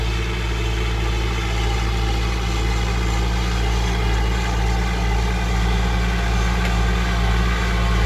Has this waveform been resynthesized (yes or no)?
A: no